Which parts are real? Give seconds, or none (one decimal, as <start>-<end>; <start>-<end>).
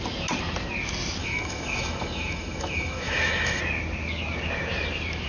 0.0-1.2; 3.6-5.3